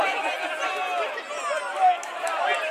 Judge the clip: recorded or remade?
recorded